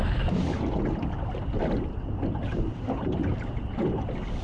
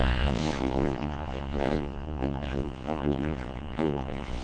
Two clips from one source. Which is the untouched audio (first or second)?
first